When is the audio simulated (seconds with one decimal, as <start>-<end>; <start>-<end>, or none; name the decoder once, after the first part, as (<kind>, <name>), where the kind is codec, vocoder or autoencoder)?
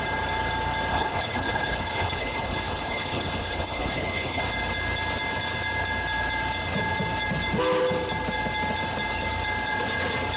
0.9-4.4 (codec, HILCodec)